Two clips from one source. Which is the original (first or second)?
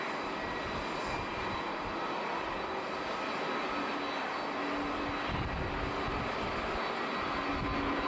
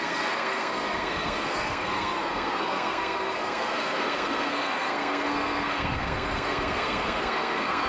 first